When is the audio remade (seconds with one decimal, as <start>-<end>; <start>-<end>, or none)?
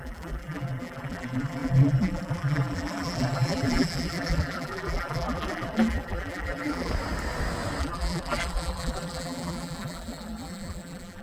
0.0-6.9; 7.8-11.2